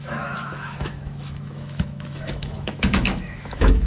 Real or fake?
fake